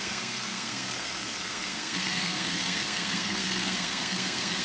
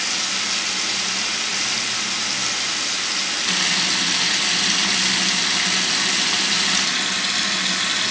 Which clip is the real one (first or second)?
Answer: second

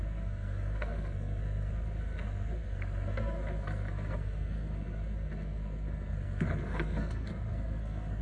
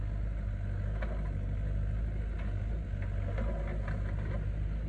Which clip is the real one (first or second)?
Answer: second